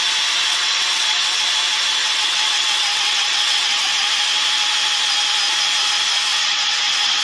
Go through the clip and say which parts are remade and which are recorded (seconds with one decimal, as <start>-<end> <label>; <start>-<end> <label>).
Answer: 0.0-0.5 recorded; 0.5-1.4 remade; 1.4-2.0 recorded; 2.0-3.9 remade; 3.9-6.3 recorded; 6.3-7.2 remade